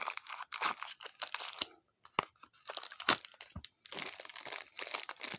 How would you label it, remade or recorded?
recorded